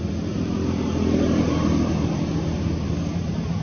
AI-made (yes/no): yes